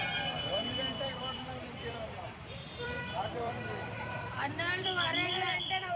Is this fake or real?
fake